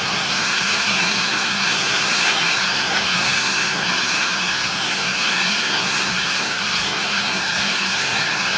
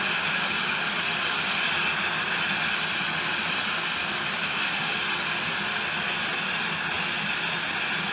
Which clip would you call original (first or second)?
second